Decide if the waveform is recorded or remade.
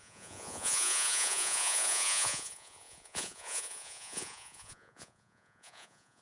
remade